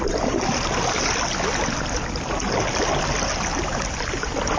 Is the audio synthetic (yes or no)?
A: no